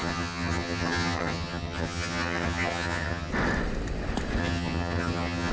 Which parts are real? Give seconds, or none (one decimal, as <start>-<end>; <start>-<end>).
3.3-4.4